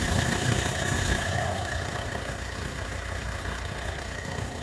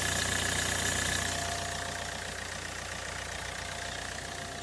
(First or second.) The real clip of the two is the second